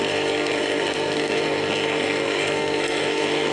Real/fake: fake